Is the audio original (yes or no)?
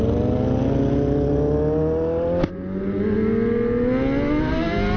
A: yes